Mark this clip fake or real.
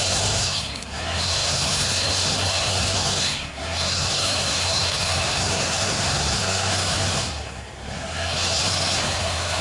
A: fake